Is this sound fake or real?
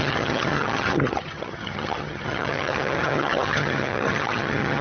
fake